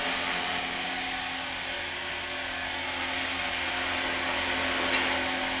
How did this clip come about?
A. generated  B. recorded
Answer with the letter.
B